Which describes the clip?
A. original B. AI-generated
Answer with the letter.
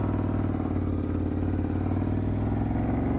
A